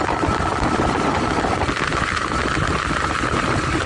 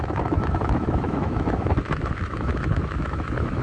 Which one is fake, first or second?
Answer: second